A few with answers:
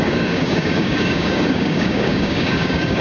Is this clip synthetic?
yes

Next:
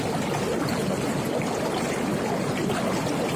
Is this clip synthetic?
no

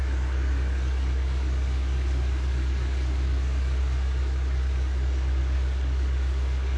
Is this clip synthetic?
yes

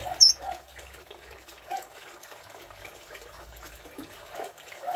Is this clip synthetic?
yes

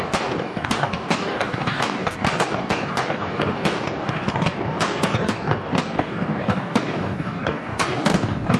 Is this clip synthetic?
yes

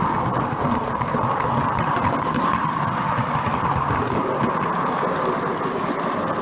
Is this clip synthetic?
no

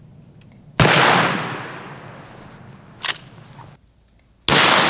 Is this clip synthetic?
no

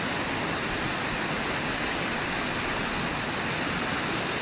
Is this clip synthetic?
no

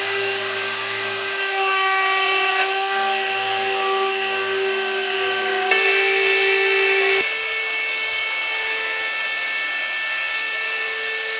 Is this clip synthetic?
yes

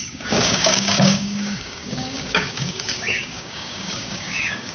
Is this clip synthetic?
yes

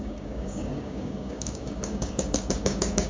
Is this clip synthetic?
yes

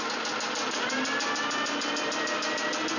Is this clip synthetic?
no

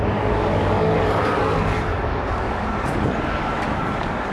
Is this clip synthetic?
yes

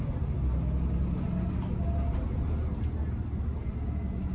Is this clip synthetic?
no